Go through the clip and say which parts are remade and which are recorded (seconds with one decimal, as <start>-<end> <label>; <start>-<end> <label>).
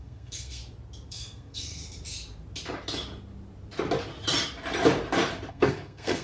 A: 0.0-0.6 remade; 0.6-1.1 recorded; 1.1-1.8 remade; 1.8-5.5 recorded; 5.5-6.2 remade